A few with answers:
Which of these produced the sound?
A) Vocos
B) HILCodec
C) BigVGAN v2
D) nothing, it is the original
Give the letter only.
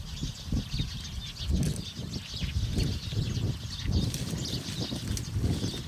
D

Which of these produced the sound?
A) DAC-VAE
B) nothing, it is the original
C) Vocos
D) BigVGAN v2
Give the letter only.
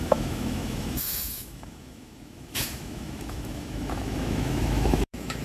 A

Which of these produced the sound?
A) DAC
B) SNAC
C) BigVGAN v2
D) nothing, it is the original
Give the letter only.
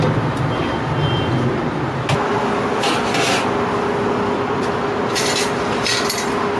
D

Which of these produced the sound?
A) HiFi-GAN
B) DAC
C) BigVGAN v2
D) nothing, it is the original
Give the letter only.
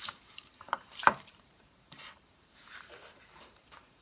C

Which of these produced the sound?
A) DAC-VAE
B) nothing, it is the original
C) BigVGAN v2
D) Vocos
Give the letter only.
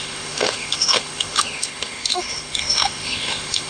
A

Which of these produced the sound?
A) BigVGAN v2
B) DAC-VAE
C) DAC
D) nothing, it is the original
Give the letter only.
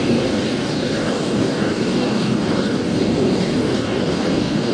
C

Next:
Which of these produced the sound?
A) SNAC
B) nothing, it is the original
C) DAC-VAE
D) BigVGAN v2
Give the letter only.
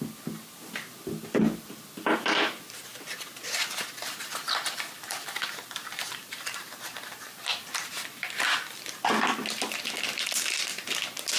B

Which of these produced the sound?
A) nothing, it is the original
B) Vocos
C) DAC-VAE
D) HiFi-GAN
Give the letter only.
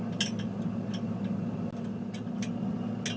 A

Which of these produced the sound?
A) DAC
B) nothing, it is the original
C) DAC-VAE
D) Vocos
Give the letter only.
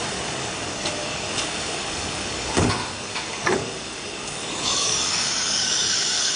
A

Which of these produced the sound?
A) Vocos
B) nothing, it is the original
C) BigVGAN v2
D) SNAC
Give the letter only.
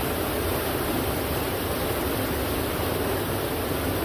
B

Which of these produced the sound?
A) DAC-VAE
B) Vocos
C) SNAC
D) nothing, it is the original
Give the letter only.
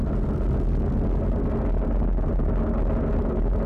D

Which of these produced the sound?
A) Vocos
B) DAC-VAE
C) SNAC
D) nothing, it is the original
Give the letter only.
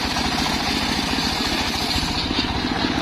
D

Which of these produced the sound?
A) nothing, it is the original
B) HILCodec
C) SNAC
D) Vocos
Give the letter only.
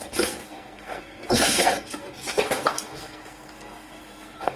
C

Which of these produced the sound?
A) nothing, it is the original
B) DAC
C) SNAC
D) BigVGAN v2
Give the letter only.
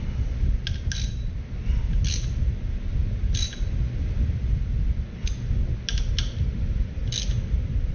A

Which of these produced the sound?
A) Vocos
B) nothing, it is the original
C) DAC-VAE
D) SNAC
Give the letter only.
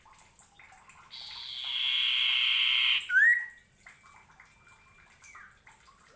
B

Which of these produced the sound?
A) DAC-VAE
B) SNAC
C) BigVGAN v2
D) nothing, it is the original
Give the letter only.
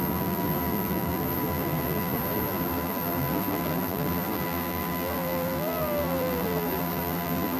C